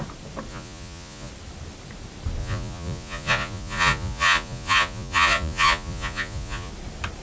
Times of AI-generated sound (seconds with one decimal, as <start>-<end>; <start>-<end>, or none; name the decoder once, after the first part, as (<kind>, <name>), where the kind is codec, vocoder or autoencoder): 0.5-1.3 (vocoder, Vocos); 2.4-6.7